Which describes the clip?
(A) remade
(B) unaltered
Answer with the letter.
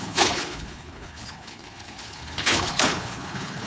A